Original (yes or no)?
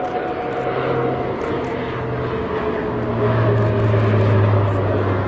yes